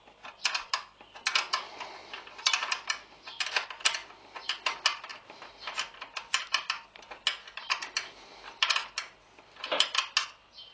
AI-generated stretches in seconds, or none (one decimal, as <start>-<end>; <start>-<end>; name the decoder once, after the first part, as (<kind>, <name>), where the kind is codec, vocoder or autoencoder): none